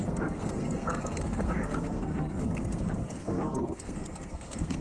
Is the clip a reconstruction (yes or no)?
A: yes